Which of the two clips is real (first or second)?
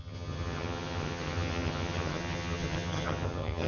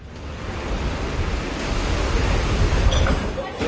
second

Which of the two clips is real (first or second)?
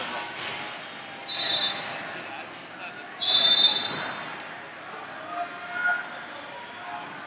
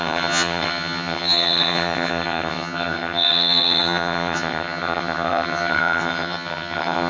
first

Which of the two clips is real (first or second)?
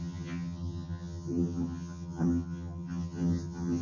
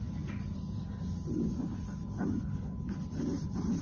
second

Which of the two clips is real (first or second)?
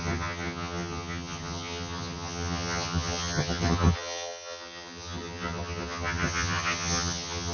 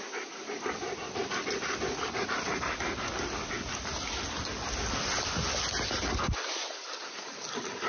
second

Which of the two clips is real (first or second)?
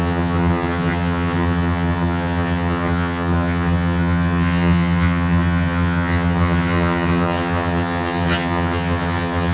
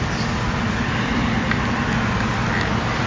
second